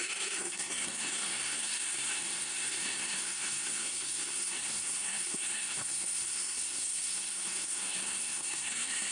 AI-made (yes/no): yes